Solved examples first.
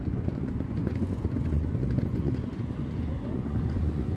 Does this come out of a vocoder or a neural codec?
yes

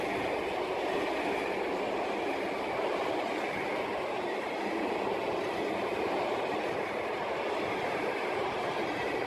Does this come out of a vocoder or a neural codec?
no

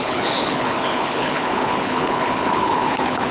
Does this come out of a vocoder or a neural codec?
yes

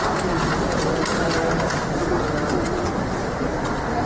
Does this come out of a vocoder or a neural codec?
no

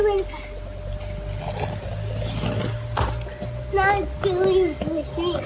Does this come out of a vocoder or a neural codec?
no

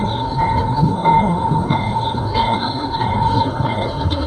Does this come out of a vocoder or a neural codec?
yes